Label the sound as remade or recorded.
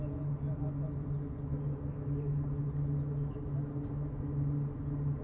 recorded